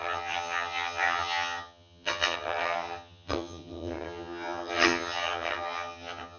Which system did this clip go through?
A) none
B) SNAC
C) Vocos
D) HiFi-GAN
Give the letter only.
D